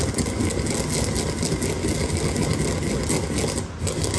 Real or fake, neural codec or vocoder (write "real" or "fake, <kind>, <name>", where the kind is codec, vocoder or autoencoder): real